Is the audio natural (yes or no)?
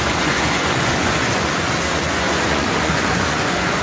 no